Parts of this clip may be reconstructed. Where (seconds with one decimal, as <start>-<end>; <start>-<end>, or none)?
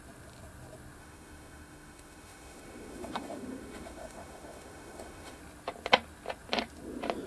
1.0-5.4